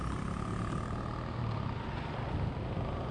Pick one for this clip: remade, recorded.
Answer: recorded